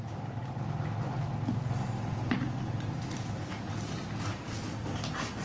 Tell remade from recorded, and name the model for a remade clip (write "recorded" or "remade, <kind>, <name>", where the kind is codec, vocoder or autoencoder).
recorded